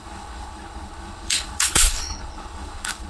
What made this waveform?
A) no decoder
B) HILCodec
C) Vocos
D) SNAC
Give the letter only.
B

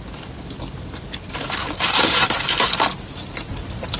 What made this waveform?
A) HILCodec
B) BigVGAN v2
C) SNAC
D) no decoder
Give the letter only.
D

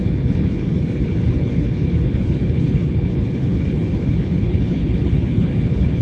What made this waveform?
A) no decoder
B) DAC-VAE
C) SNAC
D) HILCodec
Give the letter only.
D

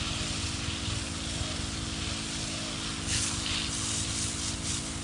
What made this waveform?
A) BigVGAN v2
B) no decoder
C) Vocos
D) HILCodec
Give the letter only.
B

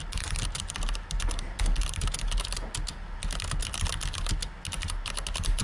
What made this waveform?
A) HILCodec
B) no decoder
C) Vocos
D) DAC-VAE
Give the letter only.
B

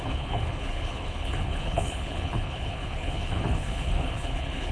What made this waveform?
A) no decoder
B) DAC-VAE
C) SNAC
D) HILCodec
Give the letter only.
D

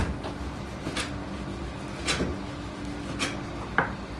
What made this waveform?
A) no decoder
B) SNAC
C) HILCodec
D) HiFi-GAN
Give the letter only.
A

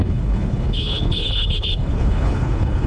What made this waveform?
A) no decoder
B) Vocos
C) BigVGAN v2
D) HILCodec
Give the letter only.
D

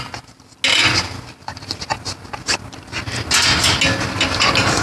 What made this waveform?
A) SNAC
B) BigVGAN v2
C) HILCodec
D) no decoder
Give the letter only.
D